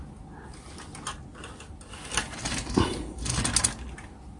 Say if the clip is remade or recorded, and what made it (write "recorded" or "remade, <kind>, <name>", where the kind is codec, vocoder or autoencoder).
recorded